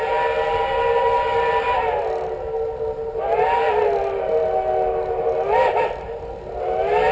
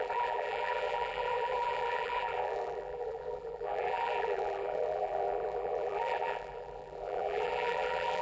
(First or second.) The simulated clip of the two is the second